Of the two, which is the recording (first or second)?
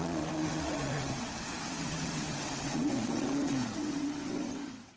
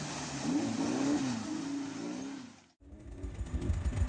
second